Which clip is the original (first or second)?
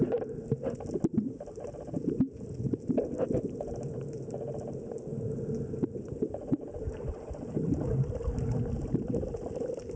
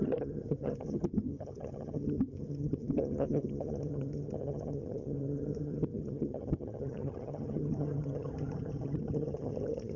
first